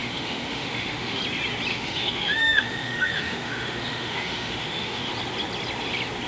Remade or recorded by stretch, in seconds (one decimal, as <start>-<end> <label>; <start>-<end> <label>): 0.0-1.2 remade; 1.2-1.7 recorded; 1.7-5.1 remade; 5.1-6.3 recorded